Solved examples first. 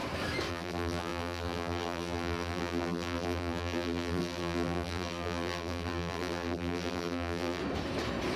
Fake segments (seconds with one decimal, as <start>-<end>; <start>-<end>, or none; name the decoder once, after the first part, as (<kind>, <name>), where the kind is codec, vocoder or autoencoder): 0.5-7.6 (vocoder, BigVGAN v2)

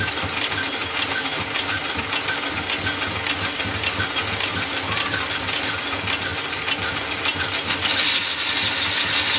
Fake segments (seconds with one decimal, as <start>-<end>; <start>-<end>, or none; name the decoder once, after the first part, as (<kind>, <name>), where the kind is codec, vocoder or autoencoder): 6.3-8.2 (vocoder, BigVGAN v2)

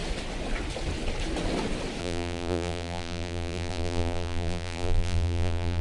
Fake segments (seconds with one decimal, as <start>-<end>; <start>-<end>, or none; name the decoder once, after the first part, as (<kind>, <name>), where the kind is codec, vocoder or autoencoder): 2.0-5.8 (vocoder, BigVGAN v2)

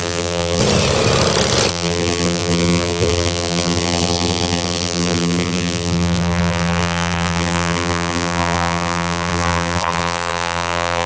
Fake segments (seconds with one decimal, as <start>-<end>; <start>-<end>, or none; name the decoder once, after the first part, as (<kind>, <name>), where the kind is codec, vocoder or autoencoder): 0.0-0.6 (vocoder, BigVGAN v2); 1.7-11.1

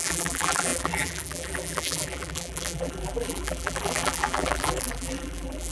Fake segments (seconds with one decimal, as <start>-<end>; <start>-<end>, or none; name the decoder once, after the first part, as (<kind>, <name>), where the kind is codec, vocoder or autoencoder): 0.0-5.7 (vocoder, BigVGAN v2)

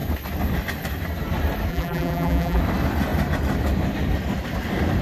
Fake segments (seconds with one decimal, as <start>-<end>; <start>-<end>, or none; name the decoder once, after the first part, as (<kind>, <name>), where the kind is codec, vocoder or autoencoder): 1.7-2.6 (vocoder, BigVGAN v2)